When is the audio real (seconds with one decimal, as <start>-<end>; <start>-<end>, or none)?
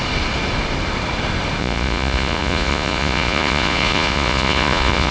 0.0-1.6